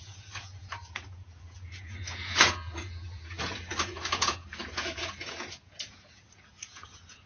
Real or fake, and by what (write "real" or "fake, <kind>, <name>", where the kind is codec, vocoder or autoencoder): fake, vocoder, Vocos